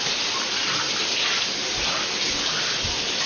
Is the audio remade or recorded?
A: recorded